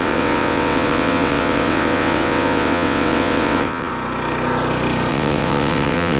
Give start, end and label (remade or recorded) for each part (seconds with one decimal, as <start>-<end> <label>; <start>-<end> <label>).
0.0-3.9 remade; 3.9-5.1 recorded; 5.1-6.2 remade